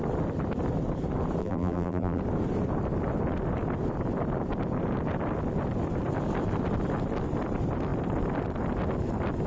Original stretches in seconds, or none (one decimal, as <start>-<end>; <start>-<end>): 0.0-1.4; 2.2-9.5